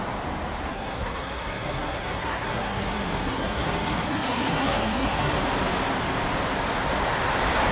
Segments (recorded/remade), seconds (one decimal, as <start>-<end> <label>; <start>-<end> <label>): 0.0-0.7 recorded; 0.7-5.3 remade; 5.3-7.7 recorded